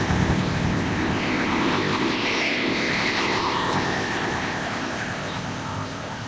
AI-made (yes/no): yes